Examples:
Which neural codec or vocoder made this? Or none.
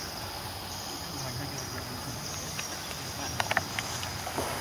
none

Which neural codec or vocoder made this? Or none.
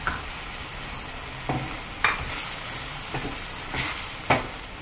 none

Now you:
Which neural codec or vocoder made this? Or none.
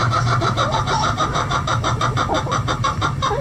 vocoder, BigVGAN v2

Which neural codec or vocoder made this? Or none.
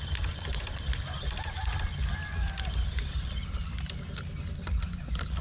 none